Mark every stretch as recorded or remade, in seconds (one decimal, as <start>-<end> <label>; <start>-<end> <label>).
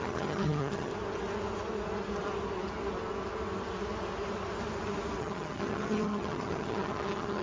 0.0-0.9 remade; 0.9-5.2 recorded; 5.2-7.4 remade